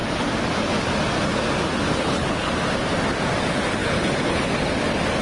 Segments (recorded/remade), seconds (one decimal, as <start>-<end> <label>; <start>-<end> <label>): 0.0-1.9 recorded; 1.9-2.5 remade; 2.5-3.8 recorded; 3.8-4.5 remade; 4.5-5.2 recorded